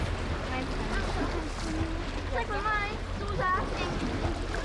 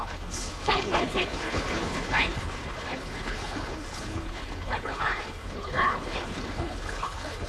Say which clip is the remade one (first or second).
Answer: second